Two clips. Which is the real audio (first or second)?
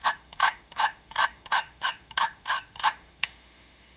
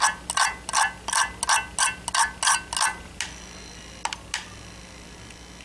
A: second